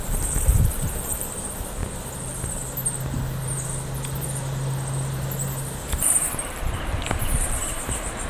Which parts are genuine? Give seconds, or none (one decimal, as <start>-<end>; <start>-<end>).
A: 1.8-6.3